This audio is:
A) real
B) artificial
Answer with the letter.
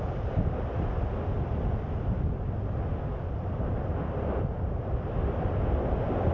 A